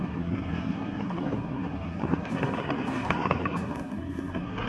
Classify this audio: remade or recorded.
remade